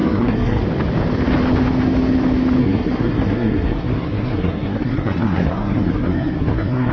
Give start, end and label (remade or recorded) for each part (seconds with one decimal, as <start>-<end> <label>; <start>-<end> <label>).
0.0-0.6 remade; 0.6-2.6 recorded; 2.6-6.9 remade